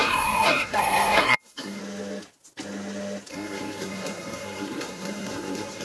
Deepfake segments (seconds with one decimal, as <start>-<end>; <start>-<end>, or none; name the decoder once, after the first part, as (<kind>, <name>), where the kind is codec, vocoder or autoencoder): 0.0-1.8 (codec, SNAC); 3.3-5.8